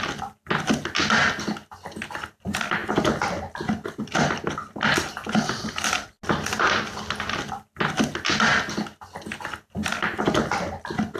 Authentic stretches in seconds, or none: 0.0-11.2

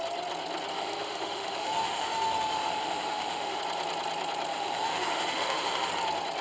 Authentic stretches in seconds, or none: 0.0-0.7; 3.6-4.5; 5.9-6.4

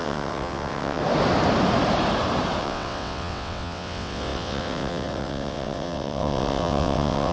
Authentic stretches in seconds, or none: 1.0-2.6

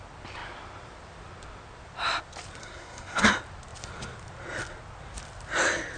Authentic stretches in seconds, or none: 0.0-2.6; 3.3-6.0